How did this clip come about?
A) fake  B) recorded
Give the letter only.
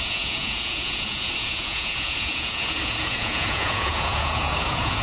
A